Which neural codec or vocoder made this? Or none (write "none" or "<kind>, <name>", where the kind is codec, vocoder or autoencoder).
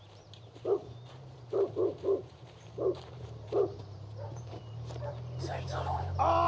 vocoder, BigVGAN v2